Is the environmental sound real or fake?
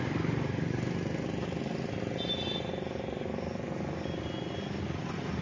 real